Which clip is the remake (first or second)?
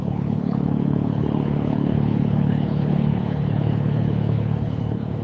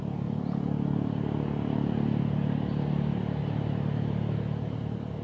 first